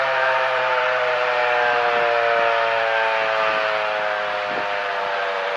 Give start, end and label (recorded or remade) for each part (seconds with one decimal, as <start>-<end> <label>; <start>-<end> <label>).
0.0-1.4 remade; 1.4-4.8 recorded; 4.8-5.6 remade